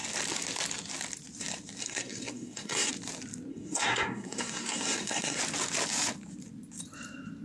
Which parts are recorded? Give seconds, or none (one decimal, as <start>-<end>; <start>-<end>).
0.0-1.8; 2.9-3.5; 5.4-7.4